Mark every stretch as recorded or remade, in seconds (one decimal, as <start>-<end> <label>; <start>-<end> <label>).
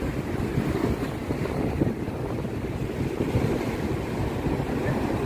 0.0-5.3 recorded